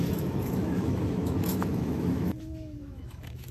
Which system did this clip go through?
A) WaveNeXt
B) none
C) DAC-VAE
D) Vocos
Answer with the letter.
C